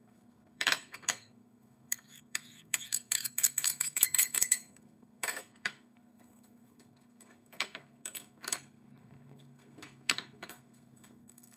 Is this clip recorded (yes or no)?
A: no